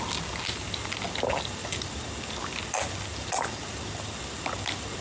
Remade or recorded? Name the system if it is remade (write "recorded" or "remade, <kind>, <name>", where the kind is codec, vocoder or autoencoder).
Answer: recorded